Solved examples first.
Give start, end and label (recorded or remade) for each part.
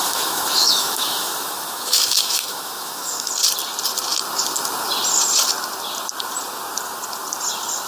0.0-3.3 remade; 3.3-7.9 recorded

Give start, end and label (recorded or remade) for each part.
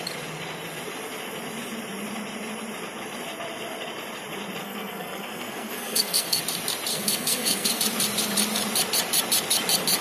0.0-4.6 recorded; 4.6-6.4 remade; 6.4-6.9 recorded; 6.9-7.8 remade; 7.8-10.0 recorded